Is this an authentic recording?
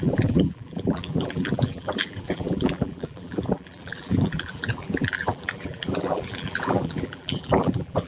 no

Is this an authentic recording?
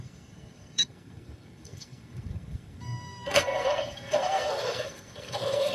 no